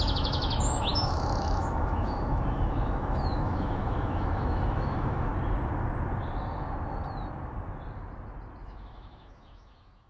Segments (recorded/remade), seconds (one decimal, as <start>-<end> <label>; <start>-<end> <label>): 0.0-5.3 remade; 5.3-8.6 recorded; 8.6-10.1 remade